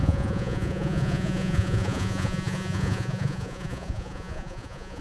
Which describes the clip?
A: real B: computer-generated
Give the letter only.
B